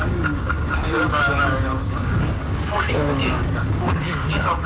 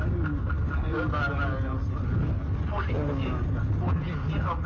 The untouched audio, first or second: second